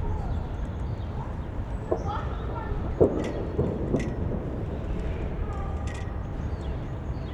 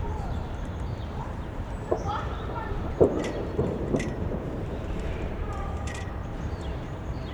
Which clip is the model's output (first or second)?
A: second